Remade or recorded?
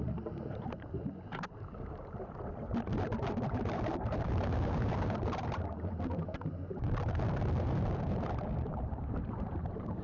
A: remade